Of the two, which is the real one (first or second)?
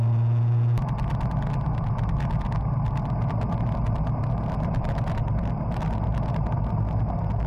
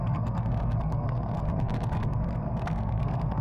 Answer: first